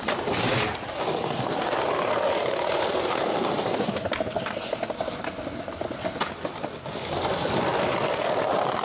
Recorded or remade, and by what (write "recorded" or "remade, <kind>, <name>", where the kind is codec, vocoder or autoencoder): recorded